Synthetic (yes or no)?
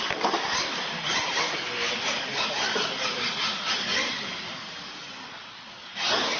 no